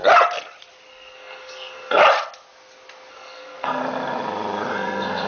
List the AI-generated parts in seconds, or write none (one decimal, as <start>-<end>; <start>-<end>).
0.9-2.0; 3.1-3.8; 4.7-5.3